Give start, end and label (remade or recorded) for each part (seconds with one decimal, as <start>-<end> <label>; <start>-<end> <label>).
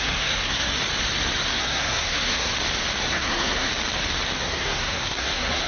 0.0-0.7 remade; 0.7-1.6 recorded; 1.6-2.5 remade; 2.5-3.0 recorded; 3.0-3.7 remade; 3.7-4.4 recorded; 4.4-5.7 remade